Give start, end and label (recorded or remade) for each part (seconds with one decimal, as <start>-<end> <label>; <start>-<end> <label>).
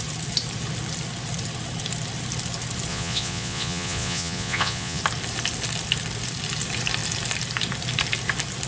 0.0-2.9 recorded; 2.9-5.0 remade; 5.0-8.7 recorded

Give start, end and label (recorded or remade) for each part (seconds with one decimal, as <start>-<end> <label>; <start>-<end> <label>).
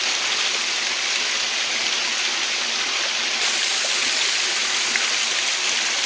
0.0-1.8 recorded; 1.8-3.7 remade; 3.7-6.1 recorded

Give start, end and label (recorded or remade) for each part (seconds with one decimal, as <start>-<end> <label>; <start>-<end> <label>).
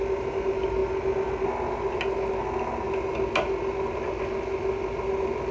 0.0-5.5 recorded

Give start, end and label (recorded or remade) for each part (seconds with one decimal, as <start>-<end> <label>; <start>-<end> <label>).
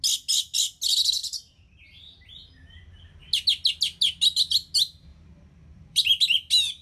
0.0-1.2 recorded; 1.2-2.3 remade; 2.3-5.1 recorded; 5.1-6.2 remade; 6.2-6.8 recorded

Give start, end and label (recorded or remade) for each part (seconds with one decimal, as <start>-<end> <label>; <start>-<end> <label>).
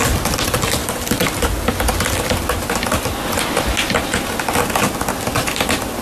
0.0-6.0 recorded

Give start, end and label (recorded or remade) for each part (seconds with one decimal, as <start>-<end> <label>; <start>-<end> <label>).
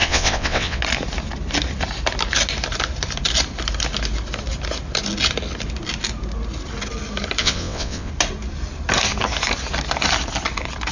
0.0-0.8 remade; 0.8-7.4 recorded; 7.4-8.1 remade; 8.1-10.9 recorded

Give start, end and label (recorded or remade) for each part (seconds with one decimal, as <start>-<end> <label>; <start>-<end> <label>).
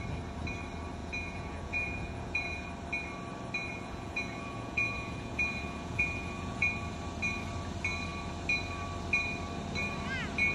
0.0-1.0 recorded; 1.0-2.7 remade; 2.7-3.6 recorded; 3.6-6.7 remade; 6.7-10.5 recorded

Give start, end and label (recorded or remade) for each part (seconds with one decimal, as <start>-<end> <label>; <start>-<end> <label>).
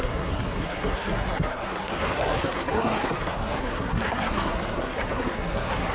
0.0-5.9 remade